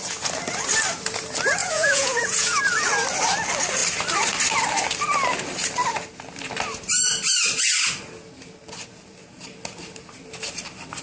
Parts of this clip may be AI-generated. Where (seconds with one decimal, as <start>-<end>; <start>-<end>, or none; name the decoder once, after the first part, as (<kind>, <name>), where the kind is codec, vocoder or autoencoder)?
1.6-2.6 (vocoder, Vocos)